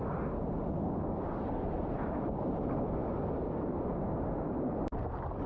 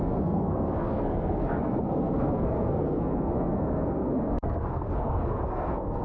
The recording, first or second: first